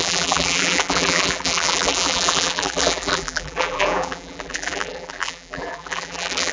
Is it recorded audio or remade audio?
remade